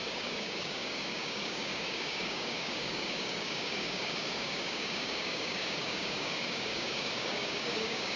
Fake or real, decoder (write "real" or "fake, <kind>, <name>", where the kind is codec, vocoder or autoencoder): fake, codec, DAC